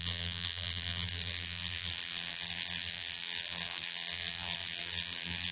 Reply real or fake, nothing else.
fake